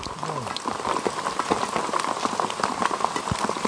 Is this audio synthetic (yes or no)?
no